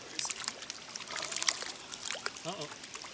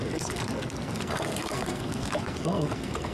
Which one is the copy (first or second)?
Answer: second